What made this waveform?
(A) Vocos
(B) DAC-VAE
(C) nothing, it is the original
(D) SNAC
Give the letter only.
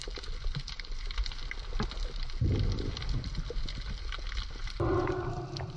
C